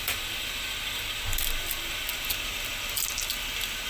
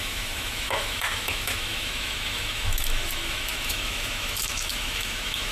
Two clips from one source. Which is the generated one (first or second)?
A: second